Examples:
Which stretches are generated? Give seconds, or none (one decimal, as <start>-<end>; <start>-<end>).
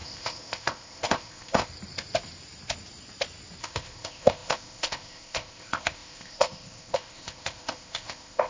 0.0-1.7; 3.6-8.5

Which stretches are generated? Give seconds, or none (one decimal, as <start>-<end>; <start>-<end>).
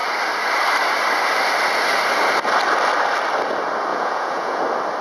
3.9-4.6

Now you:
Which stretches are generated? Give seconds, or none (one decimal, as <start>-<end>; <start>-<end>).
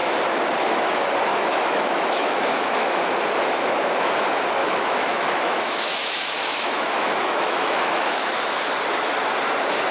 1.3-3.0; 4.6-8.6